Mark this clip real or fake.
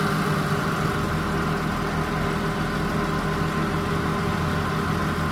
real